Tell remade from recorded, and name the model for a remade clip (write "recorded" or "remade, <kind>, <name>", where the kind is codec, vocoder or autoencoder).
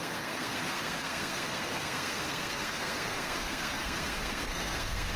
remade, codec, SNAC